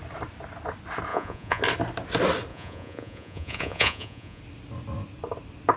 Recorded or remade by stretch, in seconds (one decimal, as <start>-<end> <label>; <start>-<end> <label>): 0.0-1.1 recorded; 1.1-1.6 remade; 1.6-2.5 recorded; 2.5-4.4 remade; 4.4-5.8 recorded